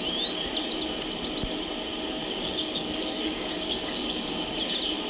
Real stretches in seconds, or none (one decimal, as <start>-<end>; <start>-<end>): 0.0-2.2; 4.6-5.1